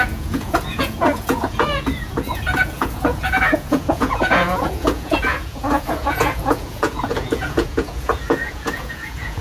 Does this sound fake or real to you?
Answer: fake